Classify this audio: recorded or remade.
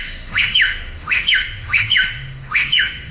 remade